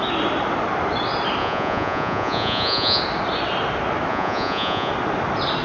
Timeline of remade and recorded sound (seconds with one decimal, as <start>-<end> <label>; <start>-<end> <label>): 0.0-1.4 recorded; 1.4-3.0 remade; 3.0-4.1 recorded; 4.1-4.9 remade; 4.9-5.6 recorded